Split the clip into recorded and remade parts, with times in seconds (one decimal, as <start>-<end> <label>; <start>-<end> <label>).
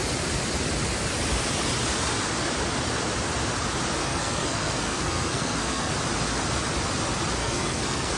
0.0-4.0 recorded; 4.0-5.9 remade; 5.9-7.4 recorded; 7.4-8.2 remade